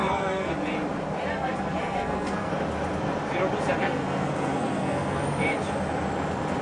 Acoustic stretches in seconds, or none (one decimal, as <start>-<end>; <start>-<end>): 0.5-1.3; 2.5-3.8; 5.2-6.6